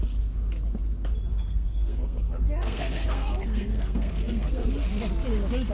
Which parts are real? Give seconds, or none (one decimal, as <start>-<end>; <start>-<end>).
0.0-1.3; 4.7-5.7

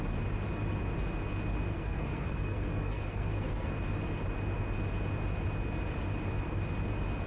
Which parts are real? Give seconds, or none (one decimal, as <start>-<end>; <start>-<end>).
0.0-1.7; 3.7-7.3

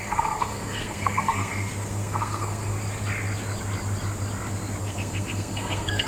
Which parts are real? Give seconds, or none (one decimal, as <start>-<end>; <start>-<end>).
2.7-4.8